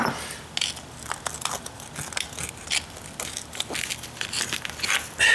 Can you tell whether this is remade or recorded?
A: recorded